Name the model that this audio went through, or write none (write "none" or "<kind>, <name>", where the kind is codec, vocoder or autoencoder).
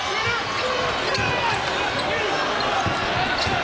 none